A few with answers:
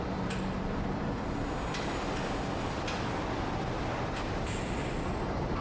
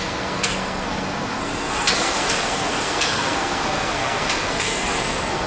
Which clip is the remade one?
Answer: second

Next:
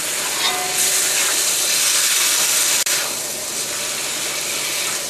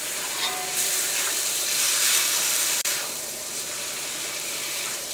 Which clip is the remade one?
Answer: second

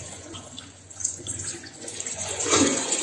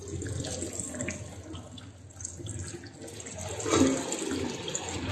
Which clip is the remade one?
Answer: first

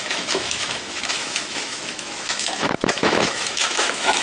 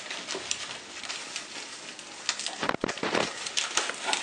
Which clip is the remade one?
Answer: first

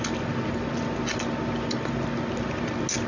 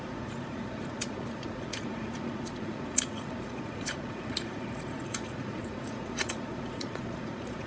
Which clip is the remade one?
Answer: second